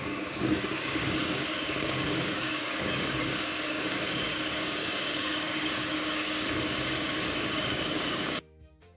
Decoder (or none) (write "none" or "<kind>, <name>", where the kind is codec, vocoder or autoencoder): codec, DAC